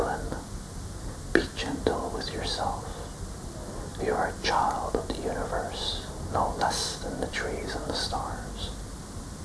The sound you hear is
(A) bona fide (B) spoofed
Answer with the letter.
A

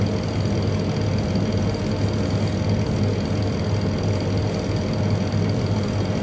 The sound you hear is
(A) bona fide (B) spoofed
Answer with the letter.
A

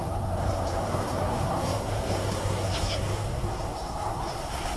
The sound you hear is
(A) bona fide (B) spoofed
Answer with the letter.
B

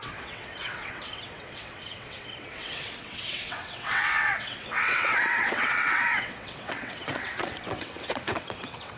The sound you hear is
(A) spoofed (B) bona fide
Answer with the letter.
A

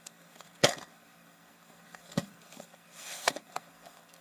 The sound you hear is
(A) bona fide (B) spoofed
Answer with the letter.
B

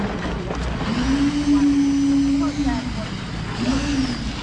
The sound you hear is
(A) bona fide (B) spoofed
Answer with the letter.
A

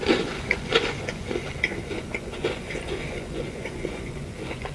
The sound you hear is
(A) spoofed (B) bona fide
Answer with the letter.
A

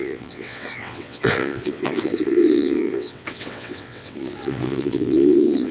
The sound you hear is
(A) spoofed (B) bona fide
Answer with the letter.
A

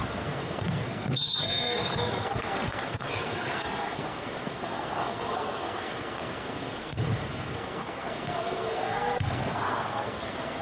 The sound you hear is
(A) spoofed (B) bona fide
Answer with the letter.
A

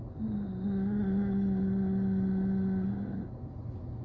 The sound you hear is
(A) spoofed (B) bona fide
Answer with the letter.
B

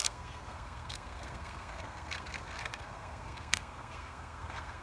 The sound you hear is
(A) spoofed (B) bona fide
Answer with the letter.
A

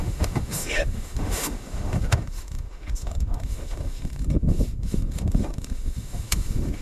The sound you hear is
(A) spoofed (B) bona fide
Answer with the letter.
A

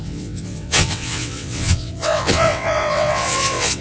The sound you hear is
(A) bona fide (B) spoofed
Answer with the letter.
B